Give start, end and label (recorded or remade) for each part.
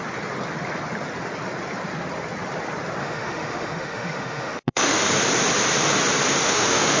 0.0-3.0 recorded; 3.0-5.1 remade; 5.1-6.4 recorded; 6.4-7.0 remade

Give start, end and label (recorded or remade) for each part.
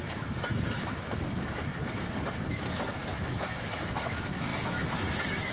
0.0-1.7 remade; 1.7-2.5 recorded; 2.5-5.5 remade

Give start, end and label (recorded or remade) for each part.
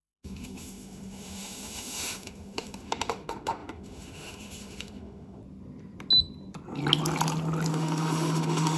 0.0-5.4 remade; 5.4-7.7 recorded; 7.7-8.8 remade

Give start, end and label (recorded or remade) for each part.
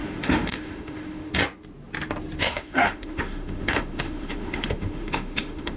0.0-1.3 remade; 1.3-2.4 recorded; 2.4-5.8 remade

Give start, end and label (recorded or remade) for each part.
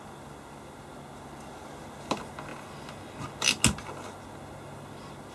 0.0-5.3 recorded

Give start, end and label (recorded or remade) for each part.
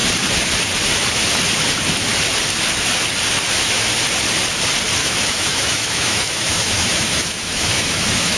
0.0-5.0 recorded; 5.0-8.4 remade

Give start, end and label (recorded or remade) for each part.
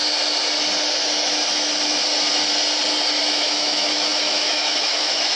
0.0-3.2 recorded; 3.2-5.4 remade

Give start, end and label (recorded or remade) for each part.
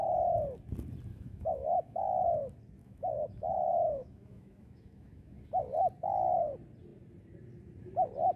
0.0-1.1 recorded; 1.1-2.0 remade; 2.0-2.8 recorded; 2.8-5.4 remade; 5.4-8.4 recorded